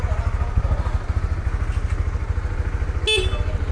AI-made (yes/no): no